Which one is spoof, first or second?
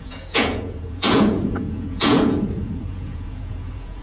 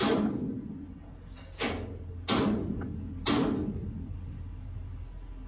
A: first